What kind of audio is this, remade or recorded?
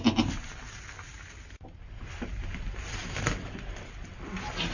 recorded